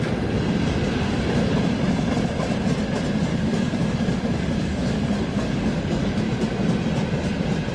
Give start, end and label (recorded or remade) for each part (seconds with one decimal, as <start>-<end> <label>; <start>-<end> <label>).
0.0-3.3 recorded; 3.3-6.2 remade; 6.2-7.7 recorded